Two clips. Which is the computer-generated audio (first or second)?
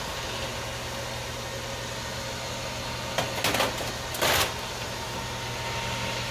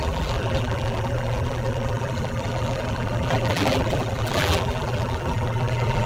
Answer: second